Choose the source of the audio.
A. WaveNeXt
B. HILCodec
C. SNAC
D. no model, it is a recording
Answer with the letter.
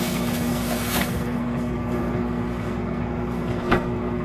C